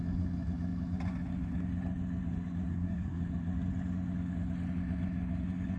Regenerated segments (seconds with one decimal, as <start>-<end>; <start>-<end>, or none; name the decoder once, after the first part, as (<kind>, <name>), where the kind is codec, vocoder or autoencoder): 2.7-3.2 (codec, SNAC)